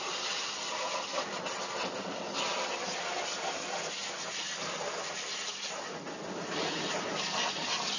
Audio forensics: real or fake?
real